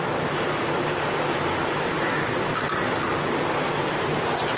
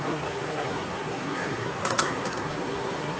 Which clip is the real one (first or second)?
first